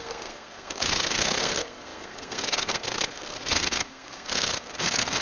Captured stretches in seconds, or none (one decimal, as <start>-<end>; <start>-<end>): none